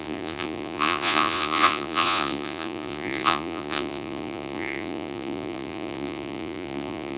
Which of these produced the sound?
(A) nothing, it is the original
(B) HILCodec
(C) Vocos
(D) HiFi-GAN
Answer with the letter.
C